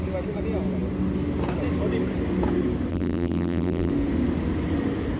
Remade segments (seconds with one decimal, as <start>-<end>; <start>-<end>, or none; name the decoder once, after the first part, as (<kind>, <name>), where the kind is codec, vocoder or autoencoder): 2.9-3.9 (vocoder, BigVGAN v2)